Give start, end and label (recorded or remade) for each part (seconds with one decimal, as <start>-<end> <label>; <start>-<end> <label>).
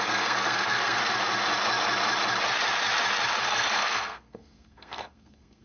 0.0-1.0 remade; 1.0-3.4 recorded; 3.4-5.6 remade